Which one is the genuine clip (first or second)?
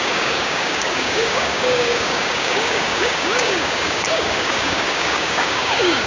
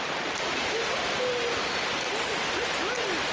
second